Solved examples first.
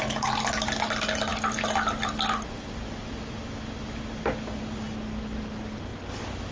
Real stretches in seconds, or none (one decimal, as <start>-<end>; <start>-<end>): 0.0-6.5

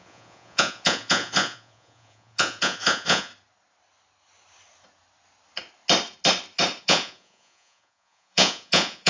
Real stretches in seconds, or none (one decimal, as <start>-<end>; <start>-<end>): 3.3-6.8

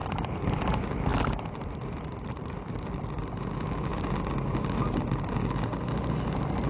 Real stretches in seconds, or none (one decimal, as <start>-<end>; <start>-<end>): 0.6-1.1; 3.1-6.7